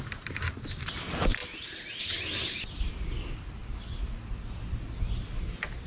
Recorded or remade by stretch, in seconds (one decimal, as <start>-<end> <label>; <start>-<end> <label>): 0.0-5.9 recorded